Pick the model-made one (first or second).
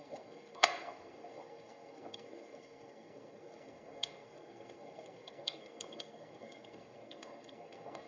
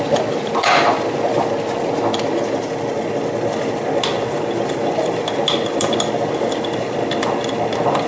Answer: first